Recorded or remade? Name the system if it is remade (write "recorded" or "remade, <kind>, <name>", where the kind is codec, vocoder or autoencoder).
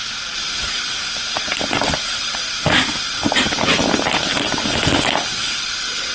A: recorded